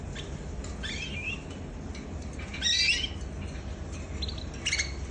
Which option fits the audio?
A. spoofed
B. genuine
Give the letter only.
B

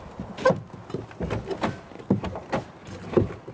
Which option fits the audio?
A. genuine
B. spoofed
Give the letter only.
A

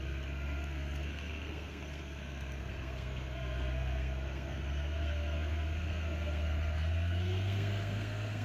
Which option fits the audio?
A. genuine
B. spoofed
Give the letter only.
B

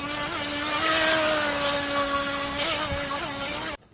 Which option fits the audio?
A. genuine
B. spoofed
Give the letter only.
A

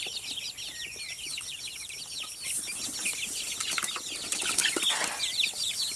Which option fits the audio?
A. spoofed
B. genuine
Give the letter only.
B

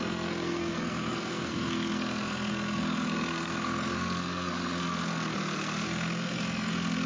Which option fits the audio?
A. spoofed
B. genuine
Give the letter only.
A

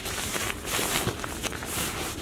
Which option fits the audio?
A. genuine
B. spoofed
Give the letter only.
A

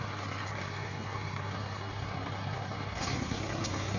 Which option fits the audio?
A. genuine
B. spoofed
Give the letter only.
B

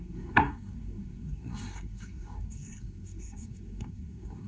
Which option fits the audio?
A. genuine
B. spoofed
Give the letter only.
B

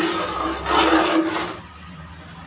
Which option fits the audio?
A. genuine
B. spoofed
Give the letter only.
A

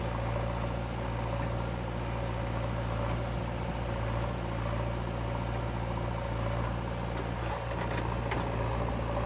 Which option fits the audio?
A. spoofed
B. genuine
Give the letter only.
B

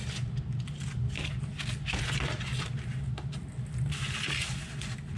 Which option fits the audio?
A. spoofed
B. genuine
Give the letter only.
B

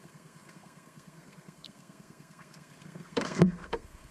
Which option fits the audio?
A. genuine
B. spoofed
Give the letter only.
B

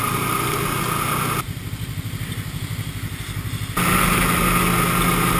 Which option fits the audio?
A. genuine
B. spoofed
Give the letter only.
A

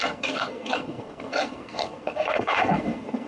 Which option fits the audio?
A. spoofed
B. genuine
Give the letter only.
A